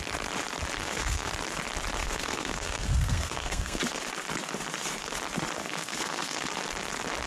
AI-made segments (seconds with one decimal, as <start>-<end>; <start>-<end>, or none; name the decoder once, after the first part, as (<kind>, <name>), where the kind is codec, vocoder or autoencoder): 0.8-1.3 (codec, SNAC); 2.0-3.8; 5.6-6.5